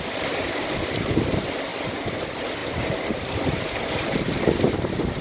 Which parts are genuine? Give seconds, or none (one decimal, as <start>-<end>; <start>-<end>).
0.0-5.2